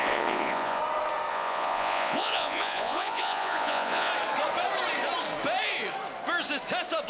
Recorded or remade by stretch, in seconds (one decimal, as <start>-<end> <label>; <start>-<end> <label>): 0.0-0.8 remade; 0.8-1.3 recorded; 1.3-4.1 remade; 4.1-7.1 recorded